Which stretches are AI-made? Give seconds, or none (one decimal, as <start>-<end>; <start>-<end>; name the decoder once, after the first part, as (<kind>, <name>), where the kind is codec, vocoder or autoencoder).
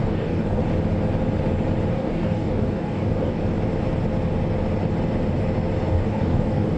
0.0-0.6 (codec, DAC); 1.9-3.4; 5.9-6.8